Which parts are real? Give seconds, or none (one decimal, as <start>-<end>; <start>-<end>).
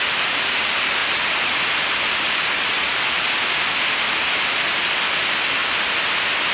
0.0-6.5